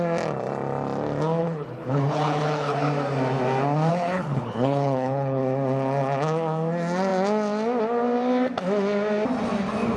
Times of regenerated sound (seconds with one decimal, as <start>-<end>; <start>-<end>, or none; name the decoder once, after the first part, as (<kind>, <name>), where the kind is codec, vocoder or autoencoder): 1.4-2.8 (codec, HILCodec); 3.9-5.4